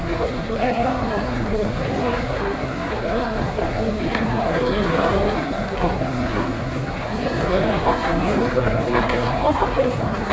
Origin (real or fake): fake